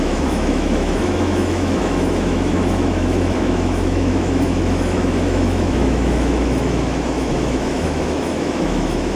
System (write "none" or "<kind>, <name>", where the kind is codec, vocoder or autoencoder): autoencoder, DAC-VAE